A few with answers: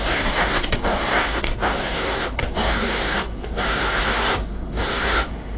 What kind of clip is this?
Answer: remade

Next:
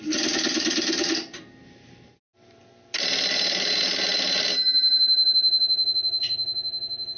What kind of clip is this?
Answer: recorded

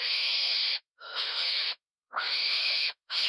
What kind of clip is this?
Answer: remade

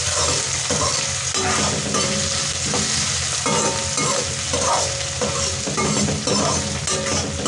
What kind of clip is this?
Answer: recorded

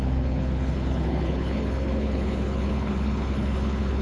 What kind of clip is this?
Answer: remade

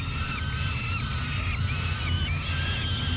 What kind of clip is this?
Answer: recorded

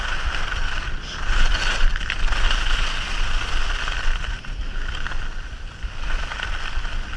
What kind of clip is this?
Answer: recorded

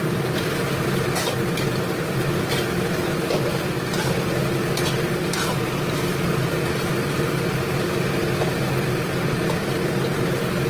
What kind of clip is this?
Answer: recorded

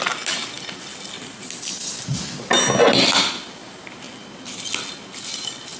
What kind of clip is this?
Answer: recorded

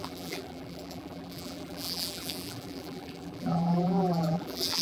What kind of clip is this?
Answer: remade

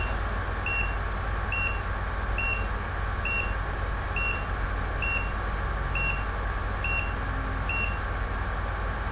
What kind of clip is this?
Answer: recorded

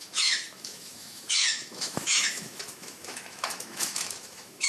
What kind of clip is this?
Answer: remade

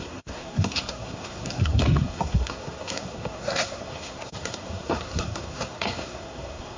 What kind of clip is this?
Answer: remade